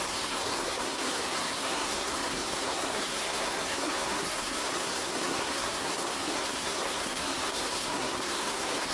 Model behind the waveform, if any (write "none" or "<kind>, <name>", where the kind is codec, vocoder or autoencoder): codec, SNAC